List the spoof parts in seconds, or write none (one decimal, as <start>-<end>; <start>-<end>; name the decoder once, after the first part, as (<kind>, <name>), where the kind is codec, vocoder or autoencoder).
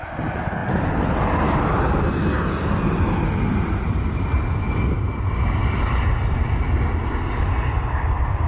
none